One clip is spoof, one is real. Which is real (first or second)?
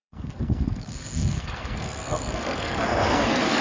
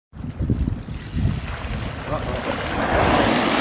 second